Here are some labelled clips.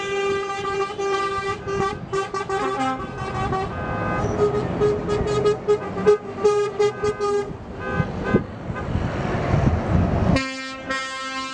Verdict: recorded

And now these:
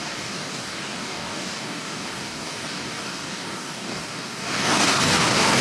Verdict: remade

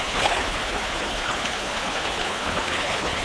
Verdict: remade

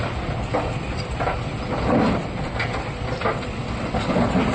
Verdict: recorded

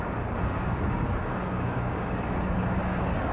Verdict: remade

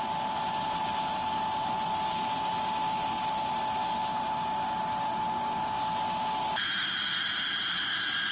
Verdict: recorded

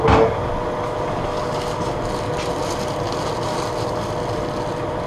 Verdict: recorded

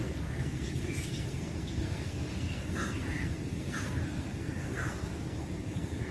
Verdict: remade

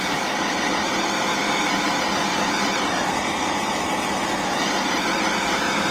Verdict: recorded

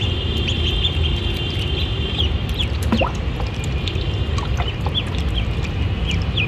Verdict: recorded